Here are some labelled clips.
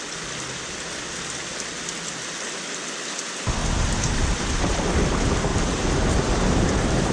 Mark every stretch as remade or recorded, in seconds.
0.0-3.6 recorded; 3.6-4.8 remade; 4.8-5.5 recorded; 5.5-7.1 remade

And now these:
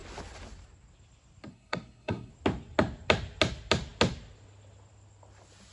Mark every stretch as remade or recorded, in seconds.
0.0-1.5 recorded; 1.5-2.3 remade; 2.3-5.7 recorded

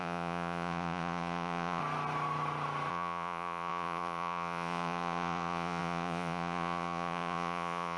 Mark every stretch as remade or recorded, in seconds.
0.0-1.8 remade; 1.8-2.9 recorded; 2.9-8.0 remade

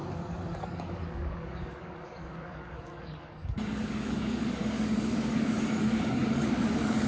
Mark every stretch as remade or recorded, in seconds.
0.0-7.1 remade

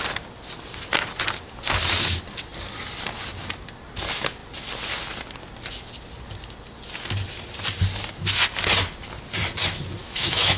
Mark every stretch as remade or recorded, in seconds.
0.0-10.0 recorded; 10.0-10.6 remade

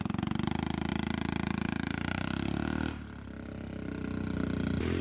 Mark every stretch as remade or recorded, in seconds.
0.0-5.0 recorded